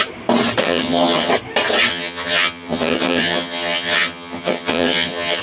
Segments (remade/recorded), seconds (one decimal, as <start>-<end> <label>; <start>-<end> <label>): 0.0-0.6 recorded; 0.6-1.3 remade; 1.3-1.9 recorded; 1.9-5.4 remade